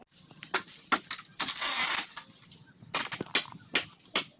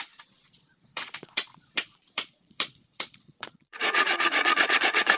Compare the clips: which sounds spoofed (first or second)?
second